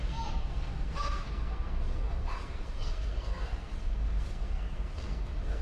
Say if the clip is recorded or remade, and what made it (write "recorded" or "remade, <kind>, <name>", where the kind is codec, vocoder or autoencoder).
remade, codec, SNAC